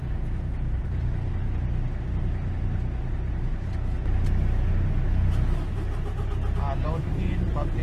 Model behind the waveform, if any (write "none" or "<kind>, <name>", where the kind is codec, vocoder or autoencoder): none